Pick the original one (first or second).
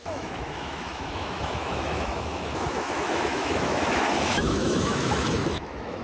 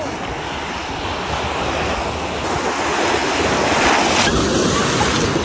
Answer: second